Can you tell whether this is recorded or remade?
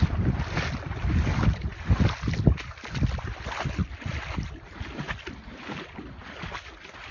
recorded